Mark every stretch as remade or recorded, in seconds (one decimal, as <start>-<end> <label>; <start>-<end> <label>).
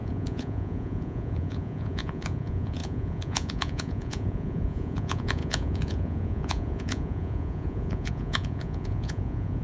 0.0-9.6 remade